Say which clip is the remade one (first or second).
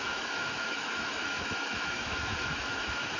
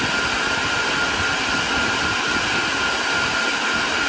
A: first